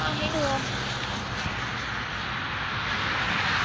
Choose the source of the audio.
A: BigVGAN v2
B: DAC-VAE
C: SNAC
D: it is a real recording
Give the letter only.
D